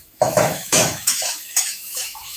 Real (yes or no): no